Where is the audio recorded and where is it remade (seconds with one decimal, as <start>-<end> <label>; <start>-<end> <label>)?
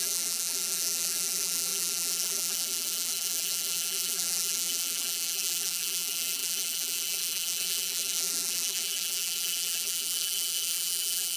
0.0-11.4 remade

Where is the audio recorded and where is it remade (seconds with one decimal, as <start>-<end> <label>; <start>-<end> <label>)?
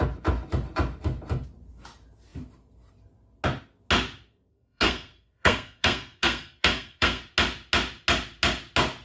0.0-4.5 recorded; 4.5-7.2 remade; 7.2-9.0 recorded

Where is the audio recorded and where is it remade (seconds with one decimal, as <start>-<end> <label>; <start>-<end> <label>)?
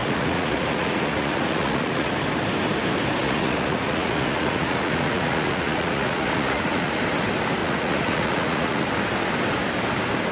0.0-2.1 remade; 2.1-3.2 recorded; 3.2-7.0 remade; 7.0-7.6 recorded; 7.6-8.9 remade; 8.9-10.3 recorded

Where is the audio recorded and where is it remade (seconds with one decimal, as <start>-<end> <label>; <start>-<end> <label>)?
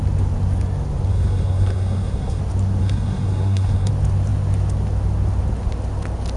0.0-1.1 recorded; 1.1-2.4 remade; 2.4-2.8 recorded; 2.8-3.9 remade; 3.9-6.4 recorded